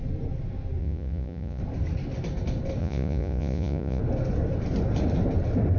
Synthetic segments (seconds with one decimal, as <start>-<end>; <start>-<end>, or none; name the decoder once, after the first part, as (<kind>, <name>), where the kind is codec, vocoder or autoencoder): 0.8-1.6 (vocoder, Vocos); 2.8-4.0